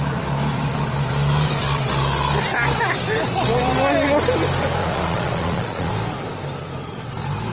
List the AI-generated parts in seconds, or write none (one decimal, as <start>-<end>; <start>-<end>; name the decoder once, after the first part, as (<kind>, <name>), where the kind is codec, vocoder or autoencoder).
4.8-5.9 (vocoder, Vocos)